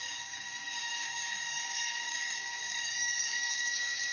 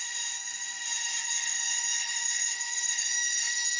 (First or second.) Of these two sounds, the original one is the second